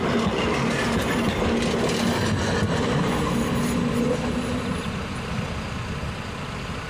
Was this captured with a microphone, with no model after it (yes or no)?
yes